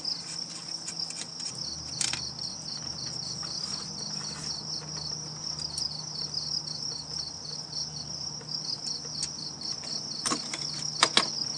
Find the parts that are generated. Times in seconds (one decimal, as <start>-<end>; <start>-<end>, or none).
none